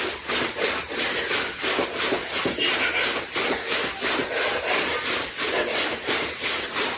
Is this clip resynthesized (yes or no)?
no